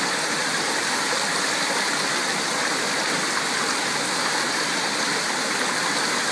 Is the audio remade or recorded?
recorded